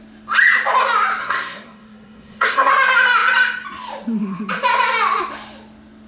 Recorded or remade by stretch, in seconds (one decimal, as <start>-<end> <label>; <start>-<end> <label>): 0.0-1.2 recorded; 1.2-2.7 remade; 2.7-6.1 recorded